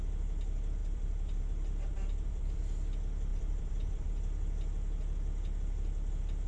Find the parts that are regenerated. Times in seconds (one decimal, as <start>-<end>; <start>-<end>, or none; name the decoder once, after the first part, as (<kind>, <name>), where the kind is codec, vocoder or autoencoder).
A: 0.8-1.4 (vocoder, BigVGAN v2); 1.9-2.6; 3.3-4.1